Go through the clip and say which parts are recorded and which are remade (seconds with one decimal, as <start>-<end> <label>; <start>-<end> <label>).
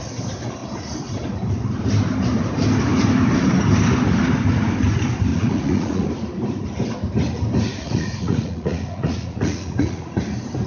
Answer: 0.0-5.3 recorded; 5.3-6.1 remade; 6.1-7.7 recorded; 7.7-10.2 remade; 10.2-10.7 recorded